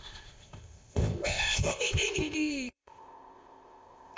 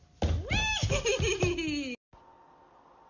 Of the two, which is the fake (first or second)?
first